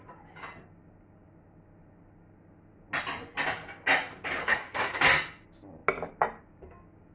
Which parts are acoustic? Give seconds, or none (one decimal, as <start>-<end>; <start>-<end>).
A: 0.0-4.4; 5.0-7.1